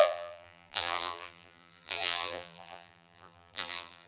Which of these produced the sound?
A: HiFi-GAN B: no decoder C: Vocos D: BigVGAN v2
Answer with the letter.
D